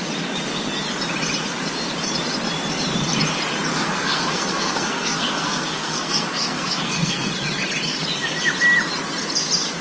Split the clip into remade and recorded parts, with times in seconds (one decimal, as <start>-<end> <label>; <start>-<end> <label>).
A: 0.0-3.7 recorded; 3.7-7.3 remade; 7.3-9.8 recorded